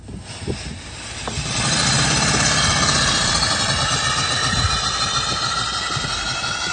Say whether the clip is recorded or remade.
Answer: recorded